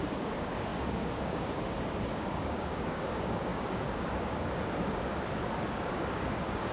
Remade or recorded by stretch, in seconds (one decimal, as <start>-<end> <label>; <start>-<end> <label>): 0.0-6.7 remade